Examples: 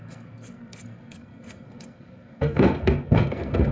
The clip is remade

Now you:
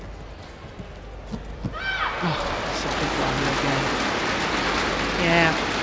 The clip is recorded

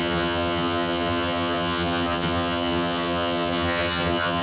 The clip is remade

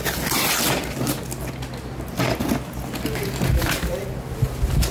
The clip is recorded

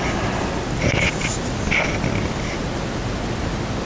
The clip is recorded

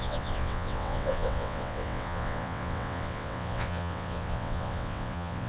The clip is remade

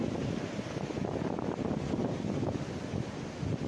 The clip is recorded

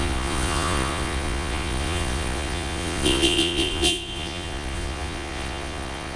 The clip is remade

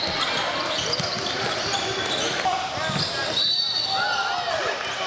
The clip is recorded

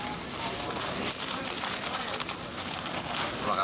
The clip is recorded